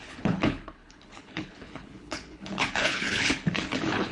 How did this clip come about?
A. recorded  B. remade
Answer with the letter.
B